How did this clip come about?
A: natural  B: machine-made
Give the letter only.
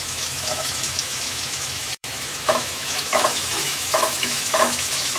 B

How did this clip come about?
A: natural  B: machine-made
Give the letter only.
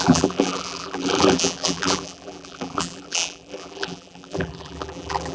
B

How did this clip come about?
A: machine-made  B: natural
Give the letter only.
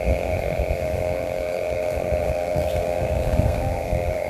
A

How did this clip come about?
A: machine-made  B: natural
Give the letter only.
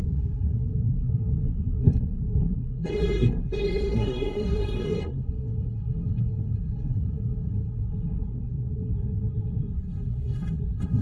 A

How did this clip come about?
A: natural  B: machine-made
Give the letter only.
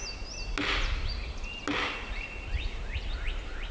A